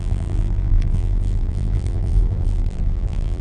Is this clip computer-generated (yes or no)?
yes